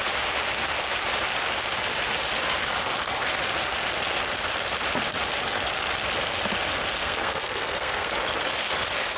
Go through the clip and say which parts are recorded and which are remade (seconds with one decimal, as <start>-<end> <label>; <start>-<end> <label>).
0.0-7.0 recorded; 7.0-8.1 remade; 8.1-9.2 recorded